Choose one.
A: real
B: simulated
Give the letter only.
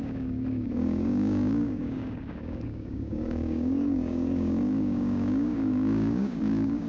B